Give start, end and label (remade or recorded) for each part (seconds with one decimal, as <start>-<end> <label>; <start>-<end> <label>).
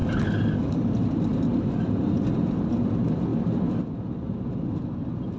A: 0.0-5.4 recorded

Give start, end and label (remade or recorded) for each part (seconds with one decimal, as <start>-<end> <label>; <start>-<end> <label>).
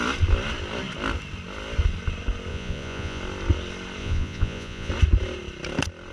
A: 0.0-2.5 recorded; 2.5-3.2 remade; 3.2-4.0 recorded; 4.0-4.9 remade; 4.9-6.1 recorded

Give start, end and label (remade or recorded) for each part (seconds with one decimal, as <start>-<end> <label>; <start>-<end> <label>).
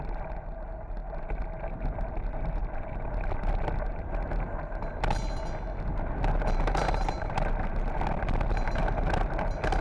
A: 0.0-9.8 recorded